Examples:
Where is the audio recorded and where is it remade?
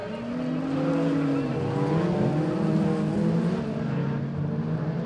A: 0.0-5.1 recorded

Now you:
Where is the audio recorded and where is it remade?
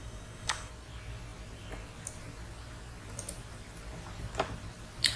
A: 0.0-0.7 remade; 0.7-5.2 recorded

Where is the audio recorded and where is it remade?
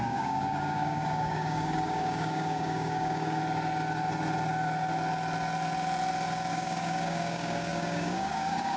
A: 0.0-3.4 remade; 3.4-6.5 recorded; 6.5-8.8 remade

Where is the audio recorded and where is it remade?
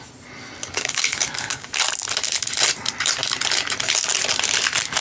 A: 0.0-0.6 recorded; 0.6-1.8 remade; 1.8-5.0 recorded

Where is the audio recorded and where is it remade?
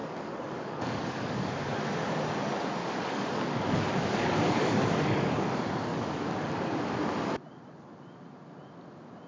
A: 0.0-1.8 remade; 1.8-2.8 recorded; 2.8-6.5 remade; 6.5-9.3 recorded